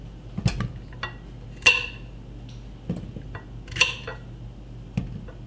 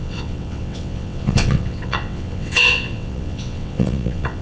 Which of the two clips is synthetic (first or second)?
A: second